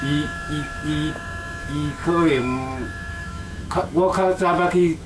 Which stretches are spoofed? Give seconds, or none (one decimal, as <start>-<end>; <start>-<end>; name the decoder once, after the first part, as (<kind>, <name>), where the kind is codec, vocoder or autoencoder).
0.0-5.1 (autoencoder, DAC-VAE)